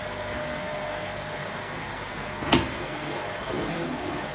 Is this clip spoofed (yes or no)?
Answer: yes